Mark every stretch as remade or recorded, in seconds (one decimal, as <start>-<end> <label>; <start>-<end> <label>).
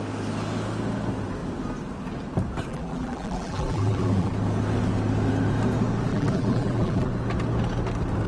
0.0-2.7 recorded; 2.7-4.3 remade; 4.3-6.1 recorded; 6.1-7.1 remade; 7.1-8.3 recorded